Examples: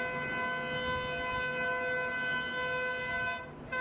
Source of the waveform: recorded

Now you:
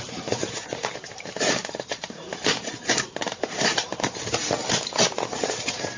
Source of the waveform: remade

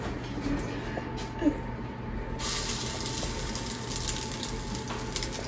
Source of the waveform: recorded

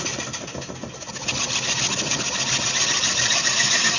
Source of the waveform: recorded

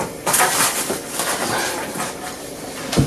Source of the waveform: remade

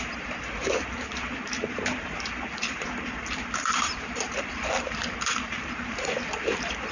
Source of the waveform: remade